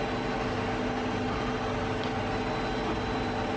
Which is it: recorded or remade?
recorded